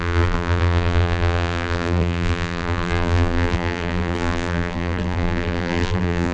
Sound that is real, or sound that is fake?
fake